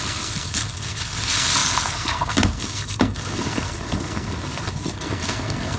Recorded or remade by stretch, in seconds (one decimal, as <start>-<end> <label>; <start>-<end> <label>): 0.0-5.8 remade